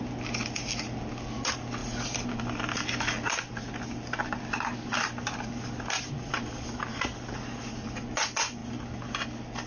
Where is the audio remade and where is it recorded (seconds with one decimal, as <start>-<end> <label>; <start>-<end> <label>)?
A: 0.0-9.7 recorded